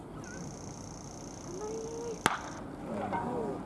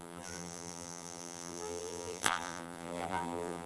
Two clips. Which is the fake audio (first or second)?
second